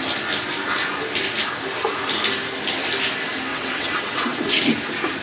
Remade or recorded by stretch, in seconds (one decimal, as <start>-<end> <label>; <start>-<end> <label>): 0.0-3.5 recorded; 3.5-4.6 remade; 4.6-5.2 recorded